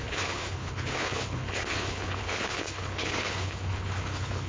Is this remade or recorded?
remade